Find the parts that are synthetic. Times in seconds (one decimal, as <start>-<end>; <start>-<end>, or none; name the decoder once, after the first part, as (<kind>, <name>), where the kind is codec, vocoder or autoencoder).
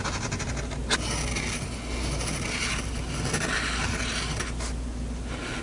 none